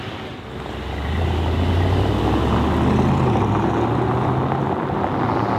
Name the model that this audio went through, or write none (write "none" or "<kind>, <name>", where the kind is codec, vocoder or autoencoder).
none